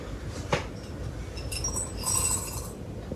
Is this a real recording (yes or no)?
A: yes